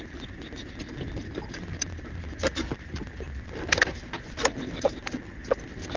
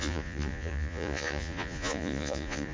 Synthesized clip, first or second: second